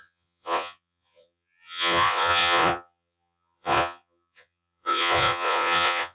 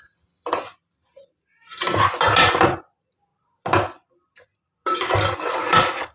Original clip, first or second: second